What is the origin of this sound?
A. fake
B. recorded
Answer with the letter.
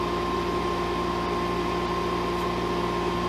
B